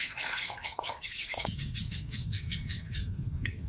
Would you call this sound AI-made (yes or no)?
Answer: yes